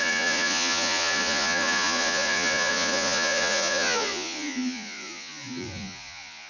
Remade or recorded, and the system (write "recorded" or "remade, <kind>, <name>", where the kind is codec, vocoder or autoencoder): remade, vocoder, Vocos